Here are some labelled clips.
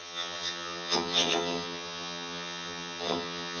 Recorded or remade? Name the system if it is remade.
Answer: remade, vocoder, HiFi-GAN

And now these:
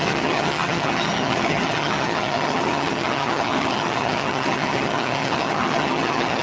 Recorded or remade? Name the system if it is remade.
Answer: remade, vocoder, HiFi-GAN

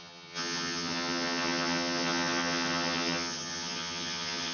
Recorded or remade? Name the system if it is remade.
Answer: remade, vocoder, HiFi-GAN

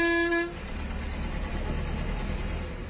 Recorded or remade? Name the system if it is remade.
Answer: recorded